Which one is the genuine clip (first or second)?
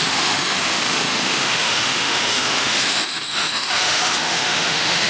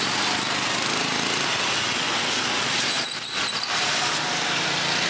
second